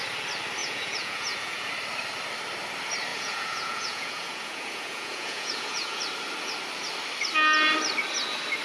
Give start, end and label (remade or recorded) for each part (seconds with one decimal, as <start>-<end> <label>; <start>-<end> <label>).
0.0-0.6 recorded; 0.6-1.7 remade; 1.7-3.1 recorded; 3.1-6.0 remade; 6.0-8.6 recorded